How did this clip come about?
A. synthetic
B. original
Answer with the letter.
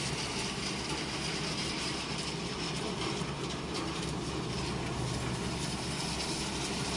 B